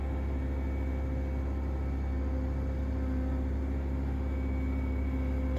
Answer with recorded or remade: recorded